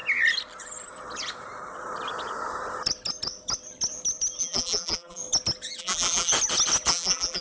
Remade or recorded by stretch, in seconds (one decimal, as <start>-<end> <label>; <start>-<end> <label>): 0.0-4.4 recorded; 4.4-5.2 remade; 5.2-5.8 recorded; 5.8-6.3 remade; 6.3-6.9 recorded; 6.9-7.4 remade